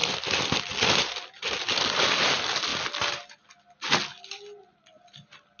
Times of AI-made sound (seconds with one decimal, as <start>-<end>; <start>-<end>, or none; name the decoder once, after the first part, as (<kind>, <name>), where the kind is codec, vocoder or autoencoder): 0.0-2.7 (vocoder, BigVGAN v2); 4.3-5.6